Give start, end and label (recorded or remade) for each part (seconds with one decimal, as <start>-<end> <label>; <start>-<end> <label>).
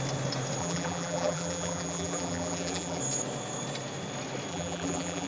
0.0-0.6 recorded; 0.6-3.0 remade; 3.0-4.5 recorded; 4.5-5.3 remade